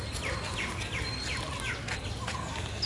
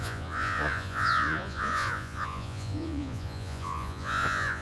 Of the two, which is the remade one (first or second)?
second